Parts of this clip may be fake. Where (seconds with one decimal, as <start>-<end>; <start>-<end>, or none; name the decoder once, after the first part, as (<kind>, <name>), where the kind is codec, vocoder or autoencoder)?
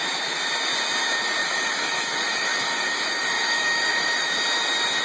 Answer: 1.4-4.4 (autoencoder, DAC-VAE)